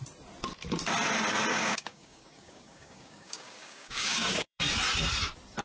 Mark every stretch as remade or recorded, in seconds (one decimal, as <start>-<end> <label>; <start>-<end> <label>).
0.0-1.5 recorded; 1.5-4.6 remade; 4.6-5.6 recorded